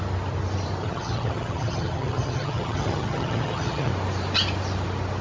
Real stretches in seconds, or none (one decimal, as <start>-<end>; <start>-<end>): 0.0-0.8; 3.9-5.2